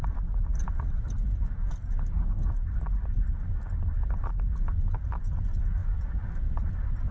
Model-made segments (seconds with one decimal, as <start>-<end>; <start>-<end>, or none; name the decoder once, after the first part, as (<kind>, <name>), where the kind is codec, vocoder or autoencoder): 0.5-1.7 (vocoder, BigVGAN v2); 5.8-6.6